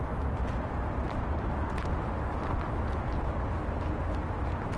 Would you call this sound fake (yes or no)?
no